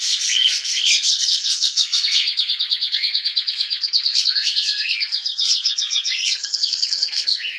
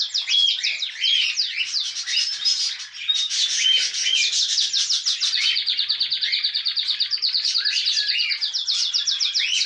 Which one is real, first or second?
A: second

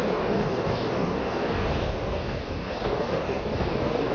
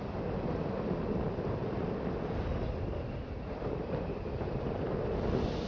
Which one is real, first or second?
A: second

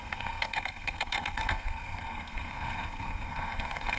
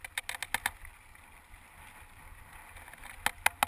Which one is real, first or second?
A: second